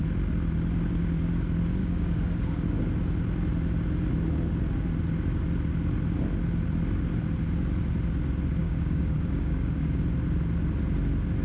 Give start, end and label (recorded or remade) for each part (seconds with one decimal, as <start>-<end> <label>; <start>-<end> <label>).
0.0-1.8 recorded; 1.8-2.8 remade; 2.8-8.6 recorded; 8.6-10.0 remade; 10.0-11.4 recorded